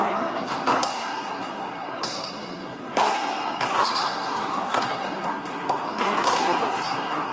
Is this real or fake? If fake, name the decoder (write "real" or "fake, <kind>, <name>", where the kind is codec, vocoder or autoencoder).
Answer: fake, codec, SNAC